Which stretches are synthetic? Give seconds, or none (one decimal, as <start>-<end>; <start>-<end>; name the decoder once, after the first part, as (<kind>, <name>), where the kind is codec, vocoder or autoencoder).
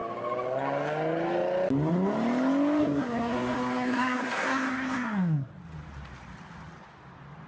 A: 2.8-5.5 (codec, SNAC)